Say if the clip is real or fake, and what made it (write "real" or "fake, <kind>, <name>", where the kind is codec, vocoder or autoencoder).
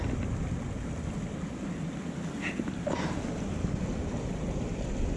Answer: real